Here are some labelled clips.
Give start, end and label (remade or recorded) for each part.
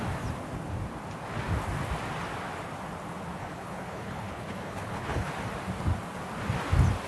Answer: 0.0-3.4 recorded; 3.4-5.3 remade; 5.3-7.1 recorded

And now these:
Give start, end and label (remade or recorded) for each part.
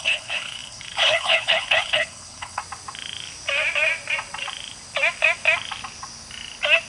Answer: 0.0-2.6 remade; 2.6-6.9 recorded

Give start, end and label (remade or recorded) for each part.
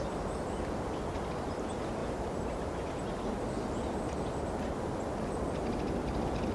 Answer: 0.0-6.5 recorded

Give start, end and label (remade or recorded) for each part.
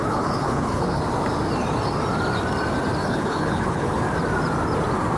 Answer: 0.0-1.0 remade; 1.0-3.0 recorded; 3.0-4.0 remade; 4.0-5.2 recorded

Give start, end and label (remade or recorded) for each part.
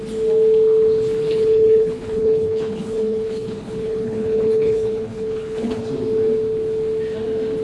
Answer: 0.0-1.2 recorded; 1.2-5.8 remade; 5.8-7.6 recorded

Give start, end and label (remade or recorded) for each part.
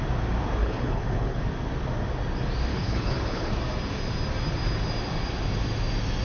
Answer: 0.0-0.6 recorded; 0.6-1.4 remade; 1.4-2.7 recorded; 2.7-3.5 remade; 3.5-6.2 recorded